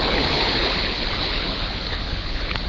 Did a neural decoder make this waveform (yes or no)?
yes